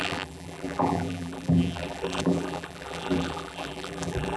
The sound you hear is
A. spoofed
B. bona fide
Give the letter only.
A